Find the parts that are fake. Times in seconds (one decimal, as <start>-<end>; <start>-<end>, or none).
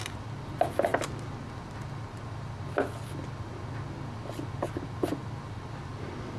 none